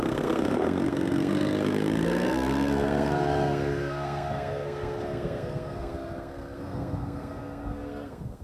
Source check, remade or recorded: remade